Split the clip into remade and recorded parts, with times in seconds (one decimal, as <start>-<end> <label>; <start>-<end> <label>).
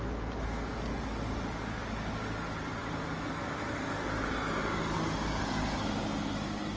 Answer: 0.0-6.8 recorded